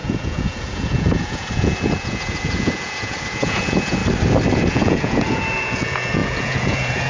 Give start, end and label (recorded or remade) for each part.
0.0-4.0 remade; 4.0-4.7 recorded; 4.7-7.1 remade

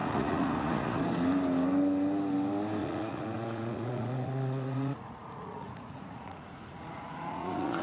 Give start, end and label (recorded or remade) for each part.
0.0-1.0 remade; 1.0-2.8 recorded; 2.8-7.8 remade